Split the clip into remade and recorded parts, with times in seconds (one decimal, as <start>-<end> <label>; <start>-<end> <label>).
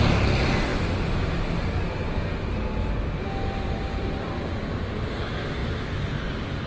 0.0-6.7 recorded